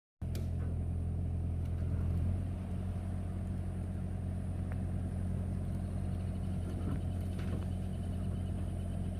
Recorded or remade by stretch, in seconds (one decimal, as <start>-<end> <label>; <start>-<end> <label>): 0.0-9.2 recorded